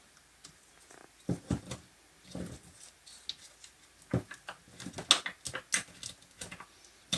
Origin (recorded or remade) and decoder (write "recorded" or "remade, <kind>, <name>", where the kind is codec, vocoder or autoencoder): recorded